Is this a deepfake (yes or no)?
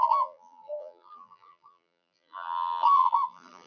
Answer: yes